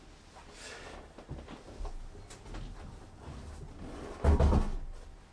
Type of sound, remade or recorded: recorded